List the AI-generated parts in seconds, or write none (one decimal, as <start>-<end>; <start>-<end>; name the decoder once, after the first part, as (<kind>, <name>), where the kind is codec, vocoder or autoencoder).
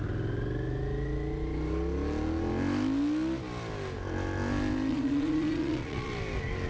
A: 4.9-6.1 (vocoder, Vocos)